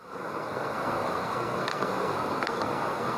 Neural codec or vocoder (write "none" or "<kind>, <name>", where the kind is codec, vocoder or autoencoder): codec, SNAC